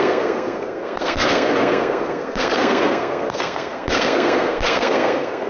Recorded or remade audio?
remade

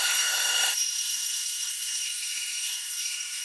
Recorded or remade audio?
remade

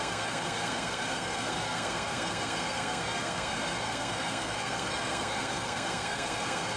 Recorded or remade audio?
remade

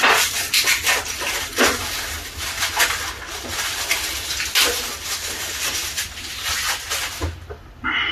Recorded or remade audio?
recorded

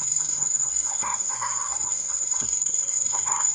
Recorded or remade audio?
remade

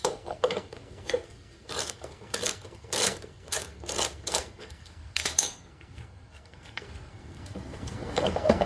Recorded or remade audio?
remade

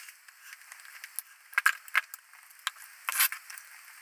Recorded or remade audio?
recorded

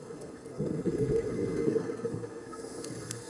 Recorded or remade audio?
remade